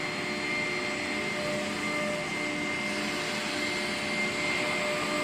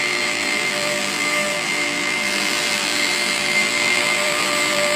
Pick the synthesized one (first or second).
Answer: second